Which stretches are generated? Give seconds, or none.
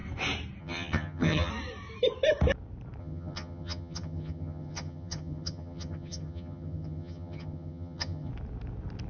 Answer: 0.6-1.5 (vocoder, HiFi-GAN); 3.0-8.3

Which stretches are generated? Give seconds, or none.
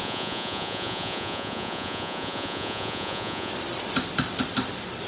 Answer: 0.0-3.5 (vocoder, Vocos)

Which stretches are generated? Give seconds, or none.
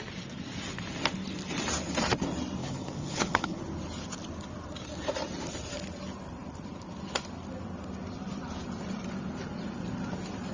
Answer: 2.6-3.6 (codec, HILCodec)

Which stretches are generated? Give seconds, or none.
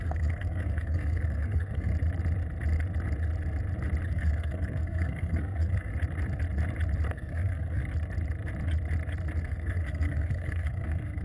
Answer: 0.0-1.9 (codec, SNAC); 4.1-5.9; 7.1-7.8; 9.4-11.2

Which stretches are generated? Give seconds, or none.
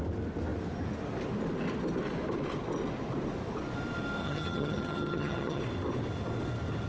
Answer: 4.2-5.6 (vocoder, HiFi-GAN)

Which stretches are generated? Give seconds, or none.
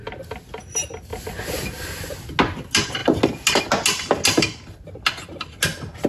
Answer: none